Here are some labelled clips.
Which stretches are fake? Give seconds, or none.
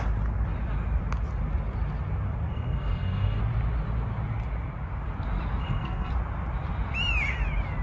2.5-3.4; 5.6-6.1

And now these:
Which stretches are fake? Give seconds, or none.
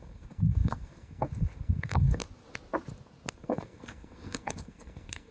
0.0-2.2; 3.3-5.3